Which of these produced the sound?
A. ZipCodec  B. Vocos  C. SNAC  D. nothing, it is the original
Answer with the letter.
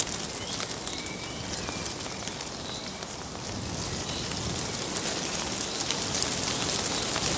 D